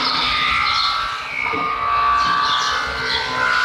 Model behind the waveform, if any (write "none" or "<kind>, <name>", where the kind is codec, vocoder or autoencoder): vocoder, BigVGAN v2